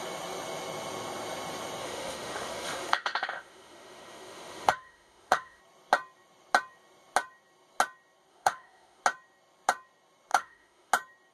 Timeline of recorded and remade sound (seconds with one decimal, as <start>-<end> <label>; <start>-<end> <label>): 0.0-1.8 recorded; 1.8-5.6 remade; 5.6-8.3 recorded; 8.3-9.0 remade; 9.0-10.3 recorded; 10.3-10.9 remade; 10.9-11.3 recorded